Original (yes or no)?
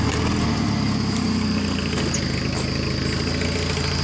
yes